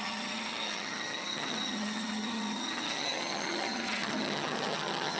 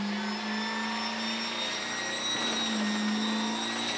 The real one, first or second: second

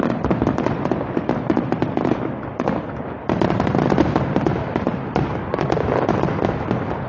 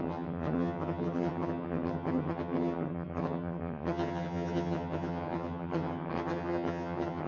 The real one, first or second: first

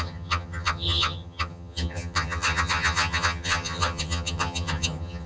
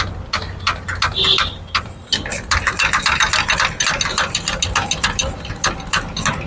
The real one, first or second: second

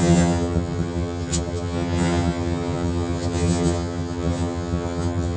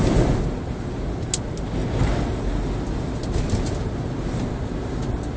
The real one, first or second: second